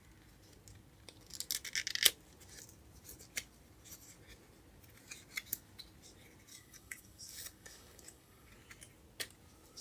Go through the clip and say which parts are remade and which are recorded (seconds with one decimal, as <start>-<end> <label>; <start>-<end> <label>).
0.0-6.5 recorded; 6.5-8.5 remade; 8.5-9.8 recorded